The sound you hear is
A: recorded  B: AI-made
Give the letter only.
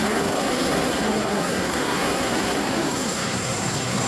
B